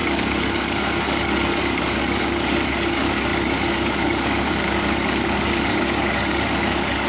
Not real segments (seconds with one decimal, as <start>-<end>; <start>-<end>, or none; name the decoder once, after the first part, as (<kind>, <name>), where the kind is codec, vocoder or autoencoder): 0.0-7.1 (codec, DAC)